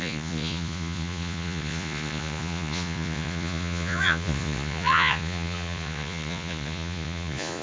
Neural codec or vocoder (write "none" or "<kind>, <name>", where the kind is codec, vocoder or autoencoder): vocoder, Vocos